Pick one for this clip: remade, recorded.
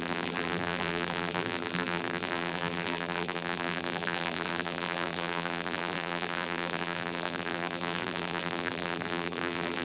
remade